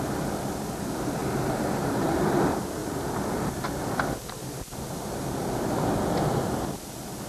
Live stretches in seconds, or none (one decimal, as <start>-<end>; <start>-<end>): 0.0-7.3